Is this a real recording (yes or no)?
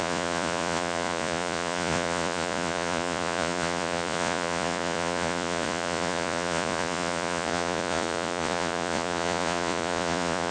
no